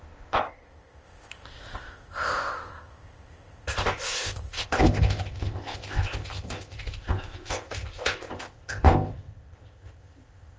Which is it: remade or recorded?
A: remade